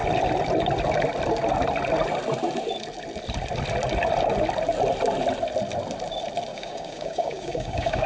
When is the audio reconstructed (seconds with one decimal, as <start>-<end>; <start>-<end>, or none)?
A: 6.5-8.1